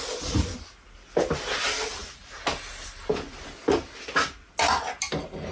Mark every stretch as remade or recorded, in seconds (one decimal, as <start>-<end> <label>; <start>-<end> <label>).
0.0-5.5 recorded